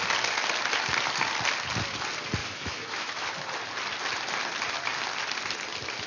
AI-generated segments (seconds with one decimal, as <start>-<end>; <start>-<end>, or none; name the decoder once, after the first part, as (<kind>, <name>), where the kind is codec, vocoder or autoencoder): 2.4-3.3 (autoencoder, DAC-VAE)